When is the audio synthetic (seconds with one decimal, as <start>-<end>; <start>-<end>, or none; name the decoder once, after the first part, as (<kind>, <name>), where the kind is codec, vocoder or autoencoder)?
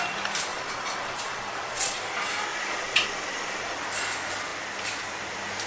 0.5-2.0 (vocoder, Vocos); 2.5-3.8